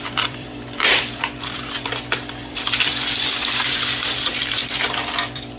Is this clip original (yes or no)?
no